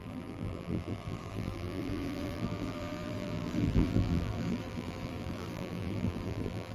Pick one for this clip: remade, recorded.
remade